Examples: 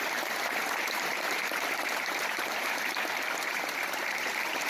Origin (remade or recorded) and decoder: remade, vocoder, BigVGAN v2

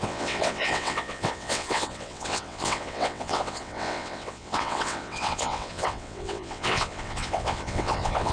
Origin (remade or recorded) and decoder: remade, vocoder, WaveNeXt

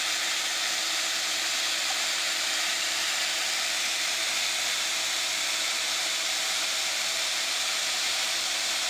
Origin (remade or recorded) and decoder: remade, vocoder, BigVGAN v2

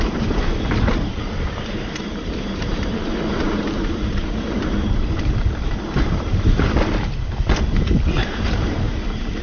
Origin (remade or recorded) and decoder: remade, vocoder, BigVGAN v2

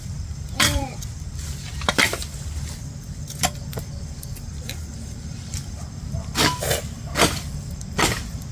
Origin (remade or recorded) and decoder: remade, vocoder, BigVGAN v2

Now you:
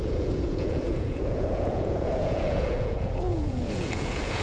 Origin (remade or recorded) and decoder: remade, vocoder, Vocos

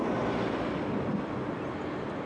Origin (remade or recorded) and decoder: recorded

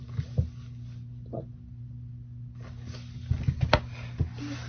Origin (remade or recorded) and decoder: recorded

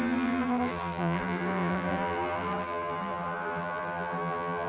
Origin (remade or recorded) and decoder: remade, vocoder, BigVGAN v2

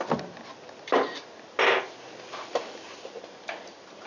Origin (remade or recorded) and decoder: recorded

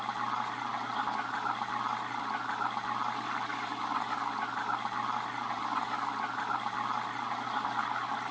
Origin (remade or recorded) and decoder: recorded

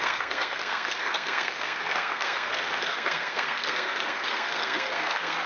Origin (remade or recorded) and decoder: remade, codec, SNAC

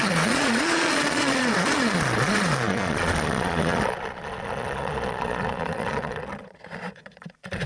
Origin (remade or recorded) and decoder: remade, vocoder, Vocos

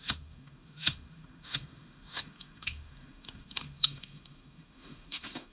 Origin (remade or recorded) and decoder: remade, autoencoder, DAC-VAE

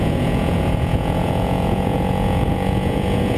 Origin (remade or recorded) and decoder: remade, vocoder, Vocos